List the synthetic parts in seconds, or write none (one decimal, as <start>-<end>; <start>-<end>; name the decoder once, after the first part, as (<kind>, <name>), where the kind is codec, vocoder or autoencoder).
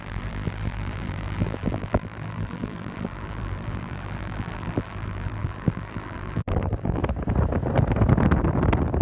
0.0-7.0 (vocoder, BigVGAN v2)